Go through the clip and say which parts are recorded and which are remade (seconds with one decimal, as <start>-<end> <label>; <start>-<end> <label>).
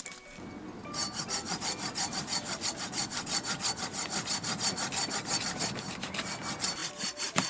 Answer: 0.0-7.5 recorded